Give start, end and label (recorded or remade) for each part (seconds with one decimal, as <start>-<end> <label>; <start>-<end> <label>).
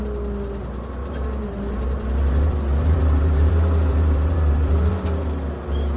0.0-1.0 recorded; 1.0-3.5 remade; 3.5-3.9 recorded; 3.9-4.9 remade; 4.9-6.0 recorded